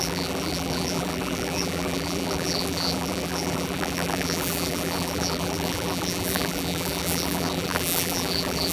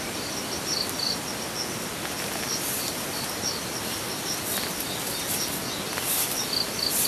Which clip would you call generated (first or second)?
first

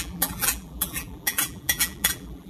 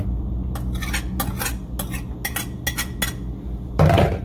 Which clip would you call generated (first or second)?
first